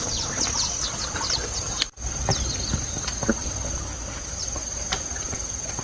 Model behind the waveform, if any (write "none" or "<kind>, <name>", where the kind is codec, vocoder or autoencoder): none